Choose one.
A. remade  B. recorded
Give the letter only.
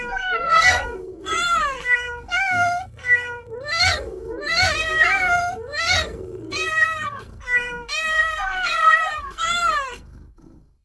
A